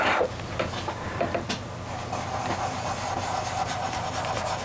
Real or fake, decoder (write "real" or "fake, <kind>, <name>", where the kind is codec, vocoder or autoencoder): real